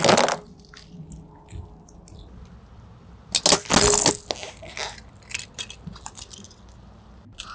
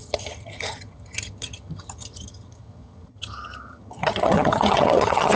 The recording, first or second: first